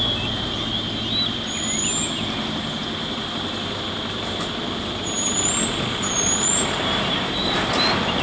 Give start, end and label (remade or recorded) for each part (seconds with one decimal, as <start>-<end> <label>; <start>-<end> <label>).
0.0-3.0 recorded; 3.0-7.7 remade; 7.7-8.2 recorded